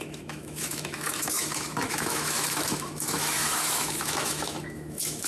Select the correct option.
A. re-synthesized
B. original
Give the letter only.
A